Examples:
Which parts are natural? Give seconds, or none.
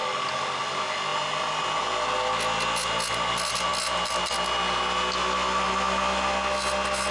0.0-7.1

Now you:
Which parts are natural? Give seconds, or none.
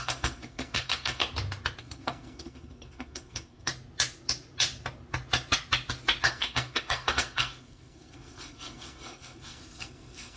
1.2-1.8; 3.7-6.3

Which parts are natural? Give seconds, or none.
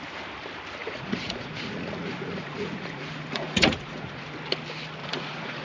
0.0-0.8; 4.2-5.0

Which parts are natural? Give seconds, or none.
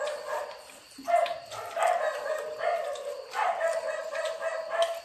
0.0-5.0